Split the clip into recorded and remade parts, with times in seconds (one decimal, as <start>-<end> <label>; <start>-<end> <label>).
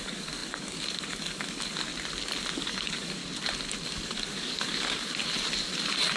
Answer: 0.0-1.9 remade; 1.9-2.5 recorded; 2.5-3.2 remade; 3.2-3.9 recorded; 3.9-5.2 remade; 5.2-6.2 recorded